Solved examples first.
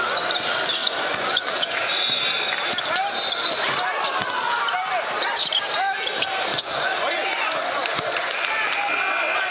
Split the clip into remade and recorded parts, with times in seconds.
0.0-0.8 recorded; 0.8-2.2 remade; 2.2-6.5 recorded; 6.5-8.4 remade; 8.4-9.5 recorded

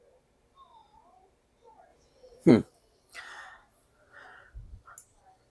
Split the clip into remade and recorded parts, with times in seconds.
0.0-5.5 recorded

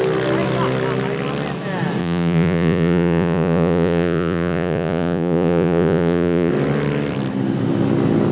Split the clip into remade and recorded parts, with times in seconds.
0.0-2.0 recorded; 2.0-6.5 remade; 6.5-8.3 recorded

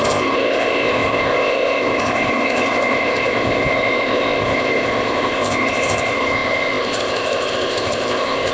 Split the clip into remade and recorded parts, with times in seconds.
0.0-8.5 remade

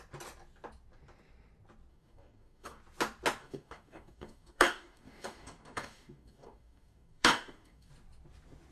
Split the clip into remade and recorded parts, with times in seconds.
0.0-1.9 recorded; 1.9-2.8 remade; 2.8-3.4 recorded; 3.4-7.9 remade; 7.9-8.7 recorded

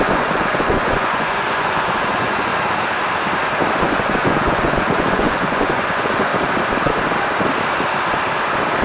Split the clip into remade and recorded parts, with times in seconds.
0.0-2.5 remade; 2.5-3.8 recorded; 3.8-6.3 remade; 6.3-8.8 recorded

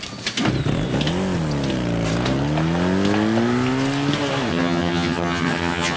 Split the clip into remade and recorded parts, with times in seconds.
0.0-4.5 recorded; 4.5-6.0 remade

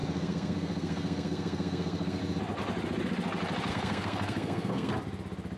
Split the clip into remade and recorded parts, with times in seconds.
0.0-2.2 remade; 2.2-3.7 recorded; 3.7-4.9 remade; 4.9-5.6 recorded